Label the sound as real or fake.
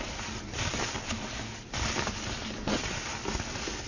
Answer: fake